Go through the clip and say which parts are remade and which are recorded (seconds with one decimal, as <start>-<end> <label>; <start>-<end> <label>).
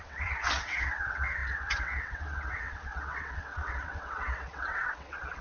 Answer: 0.0-5.4 remade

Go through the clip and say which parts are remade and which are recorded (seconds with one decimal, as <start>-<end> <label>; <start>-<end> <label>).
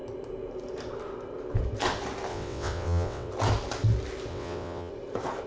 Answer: 0.0-2.3 recorded; 2.3-3.3 remade; 3.3-4.3 recorded; 4.3-4.9 remade; 4.9-5.5 recorded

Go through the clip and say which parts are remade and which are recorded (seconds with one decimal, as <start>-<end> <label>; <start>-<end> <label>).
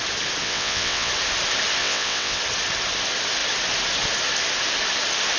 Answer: 0.0-0.4 recorded; 0.4-1.1 remade; 1.1-1.8 recorded; 1.8-2.4 remade; 2.4-5.4 recorded